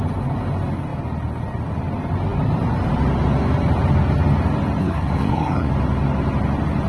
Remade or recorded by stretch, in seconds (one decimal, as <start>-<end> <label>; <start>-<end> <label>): 0.0-4.8 recorded; 4.8-5.7 remade; 5.7-6.9 recorded